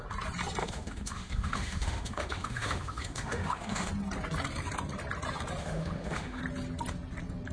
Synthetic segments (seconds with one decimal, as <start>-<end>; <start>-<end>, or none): 0.6-3.9; 5.6-6.4